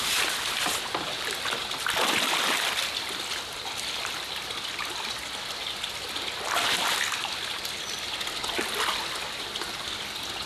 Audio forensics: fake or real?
real